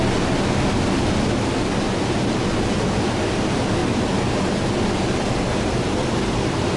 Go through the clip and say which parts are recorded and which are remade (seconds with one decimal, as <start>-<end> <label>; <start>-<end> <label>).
0.0-6.8 recorded